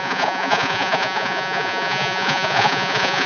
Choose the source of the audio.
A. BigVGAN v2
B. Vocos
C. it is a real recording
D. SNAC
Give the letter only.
B